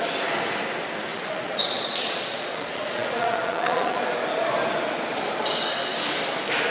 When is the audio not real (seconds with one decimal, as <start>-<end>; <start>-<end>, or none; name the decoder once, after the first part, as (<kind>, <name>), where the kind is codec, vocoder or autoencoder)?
1.1-4.0 (vocoder, Vocos)